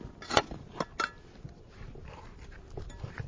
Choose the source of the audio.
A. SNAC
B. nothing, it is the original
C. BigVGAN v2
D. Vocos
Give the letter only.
B